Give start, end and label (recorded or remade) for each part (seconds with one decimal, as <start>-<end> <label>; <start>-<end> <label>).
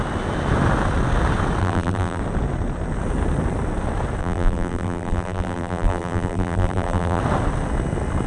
0.0-1.6 recorded; 1.6-2.2 remade; 2.2-4.2 recorded; 4.2-7.2 remade; 7.2-8.3 recorded